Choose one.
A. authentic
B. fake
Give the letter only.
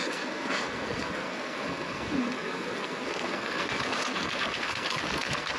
B